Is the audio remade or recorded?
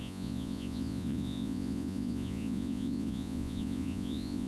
remade